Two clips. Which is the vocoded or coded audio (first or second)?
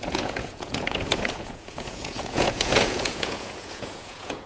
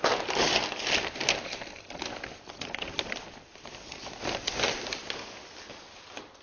first